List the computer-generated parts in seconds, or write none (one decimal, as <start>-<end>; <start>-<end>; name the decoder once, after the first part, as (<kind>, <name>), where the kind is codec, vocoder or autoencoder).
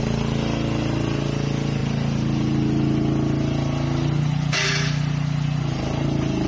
none